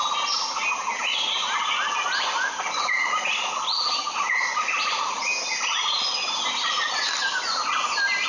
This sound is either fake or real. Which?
real